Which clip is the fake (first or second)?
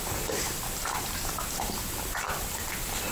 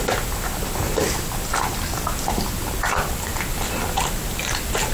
first